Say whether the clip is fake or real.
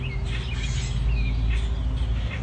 real